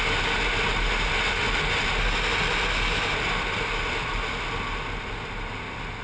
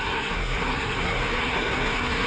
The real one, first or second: first